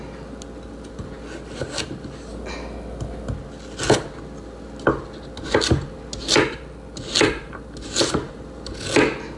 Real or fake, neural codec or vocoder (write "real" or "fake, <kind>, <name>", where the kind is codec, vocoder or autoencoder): real